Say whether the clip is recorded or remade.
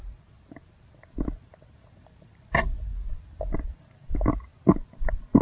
recorded